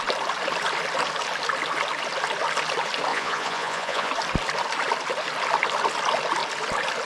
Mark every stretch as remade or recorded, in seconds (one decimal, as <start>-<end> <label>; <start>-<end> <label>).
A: 0.0-3.1 recorded; 3.1-4.1 remade; 4.1-7.1 recorded